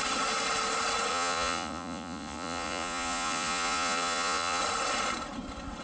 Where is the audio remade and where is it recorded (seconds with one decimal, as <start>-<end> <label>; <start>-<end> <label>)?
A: 0.0-1.1 recorded; 1.1-4.6 remade; 4.6-5.8 recorded